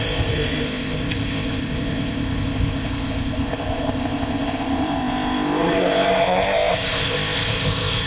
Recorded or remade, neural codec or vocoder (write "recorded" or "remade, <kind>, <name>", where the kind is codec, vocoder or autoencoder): remade, codec, ZipCodec